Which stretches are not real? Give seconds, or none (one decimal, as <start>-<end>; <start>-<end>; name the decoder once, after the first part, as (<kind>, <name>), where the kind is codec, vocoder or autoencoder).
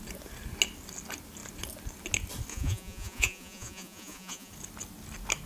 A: 2.5-4.5 (vocoder, Vocos)